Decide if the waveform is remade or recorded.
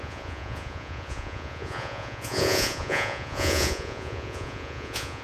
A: remade